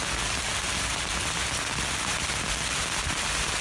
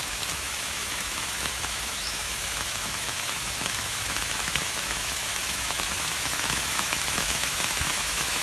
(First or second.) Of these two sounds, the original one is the first